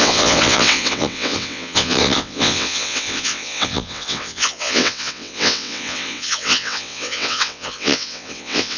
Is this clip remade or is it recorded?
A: remade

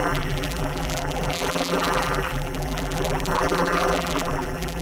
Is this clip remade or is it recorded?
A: remade